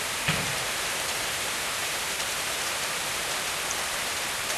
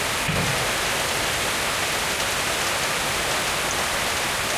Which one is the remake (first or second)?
first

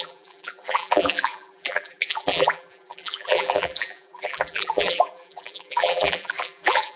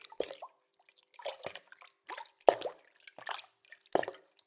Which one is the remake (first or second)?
first